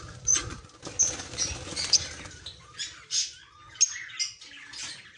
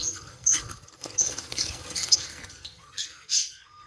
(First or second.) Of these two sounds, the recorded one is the first